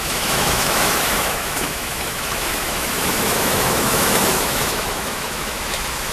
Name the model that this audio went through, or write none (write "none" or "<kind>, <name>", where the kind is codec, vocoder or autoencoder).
autoencoder, DAC-VAE